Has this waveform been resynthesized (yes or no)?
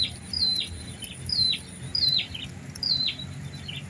no